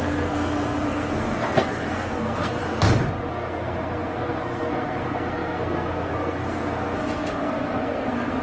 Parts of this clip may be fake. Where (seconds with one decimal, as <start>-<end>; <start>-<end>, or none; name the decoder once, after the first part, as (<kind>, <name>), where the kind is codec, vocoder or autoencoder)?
0.0-2.6 (codec, SNAC); 3.3-8.4